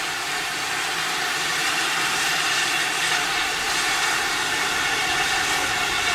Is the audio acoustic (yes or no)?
no